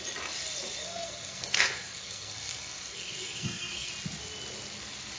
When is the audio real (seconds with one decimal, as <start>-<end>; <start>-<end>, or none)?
0.0-0.8; 3.9-5.2